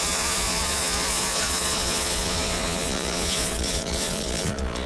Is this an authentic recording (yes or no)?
no